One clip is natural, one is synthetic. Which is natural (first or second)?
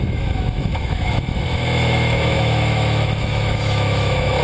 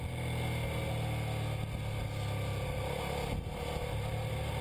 second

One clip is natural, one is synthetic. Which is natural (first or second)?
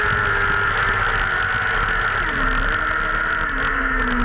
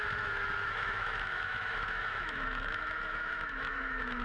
first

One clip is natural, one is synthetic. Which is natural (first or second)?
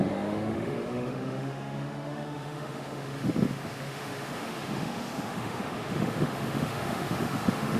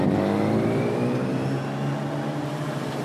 second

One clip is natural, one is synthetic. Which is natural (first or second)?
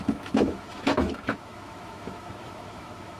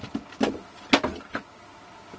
second